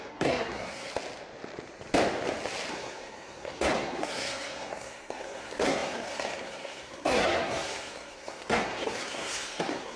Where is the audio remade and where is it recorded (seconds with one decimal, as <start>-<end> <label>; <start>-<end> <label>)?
0.0-0.9 remade; 0.9-2.7 recorded; 2.7-10.0 remade